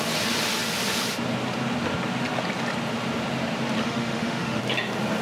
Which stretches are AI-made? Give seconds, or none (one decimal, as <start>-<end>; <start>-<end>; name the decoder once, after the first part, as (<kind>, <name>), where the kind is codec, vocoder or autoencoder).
3.8-4.6 (autoencoder, DAC-VAE)